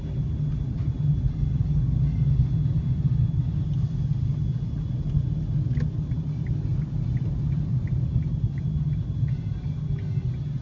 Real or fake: real